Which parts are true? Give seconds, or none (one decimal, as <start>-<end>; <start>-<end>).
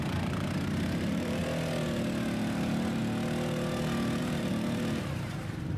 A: 1.4-2.4; 3.0-4.2